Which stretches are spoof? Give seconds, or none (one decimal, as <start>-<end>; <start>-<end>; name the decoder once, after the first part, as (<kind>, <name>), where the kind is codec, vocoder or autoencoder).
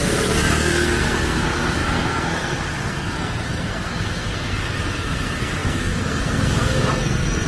0.0-7.5 (codec, SNAC)